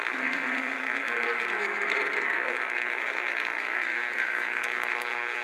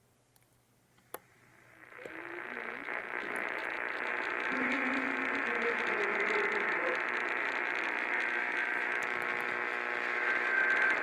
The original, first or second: second